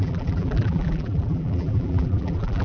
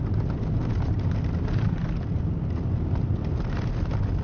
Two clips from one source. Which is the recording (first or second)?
second